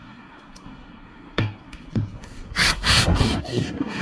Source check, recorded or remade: remade